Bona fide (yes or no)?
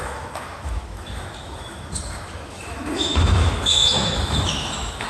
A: no